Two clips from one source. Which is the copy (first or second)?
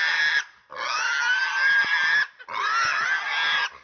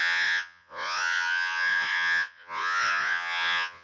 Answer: second